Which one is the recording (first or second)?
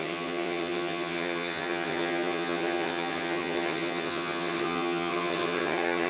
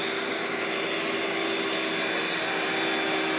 second